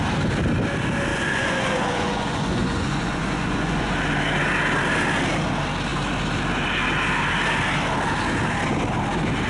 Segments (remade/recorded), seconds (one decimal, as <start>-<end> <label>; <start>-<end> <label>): 0.0-1.1 recorded; 1.1-3.9 remade; 3.9-9.5 recorded